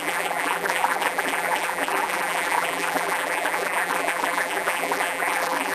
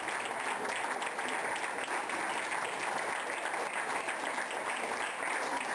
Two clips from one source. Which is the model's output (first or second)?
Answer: first